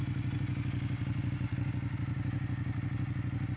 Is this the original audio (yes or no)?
yes